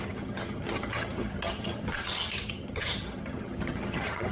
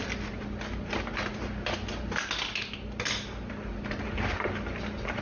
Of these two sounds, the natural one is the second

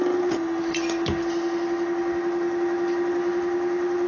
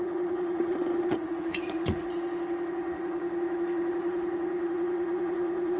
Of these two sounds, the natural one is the first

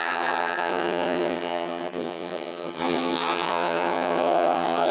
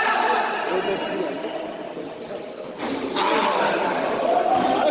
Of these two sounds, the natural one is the second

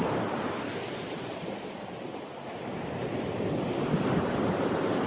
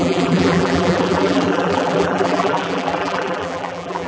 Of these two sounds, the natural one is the first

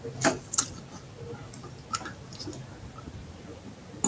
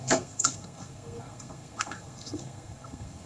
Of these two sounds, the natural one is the first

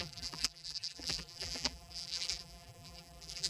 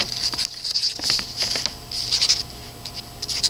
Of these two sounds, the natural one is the second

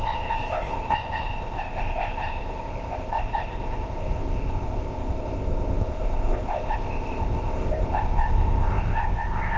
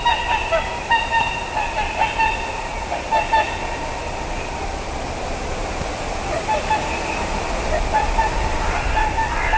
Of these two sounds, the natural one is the second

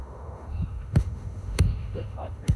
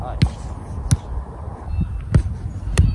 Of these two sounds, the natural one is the second